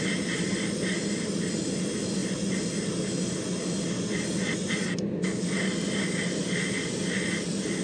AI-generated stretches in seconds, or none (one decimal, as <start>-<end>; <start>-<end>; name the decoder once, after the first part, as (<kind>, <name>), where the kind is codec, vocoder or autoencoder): none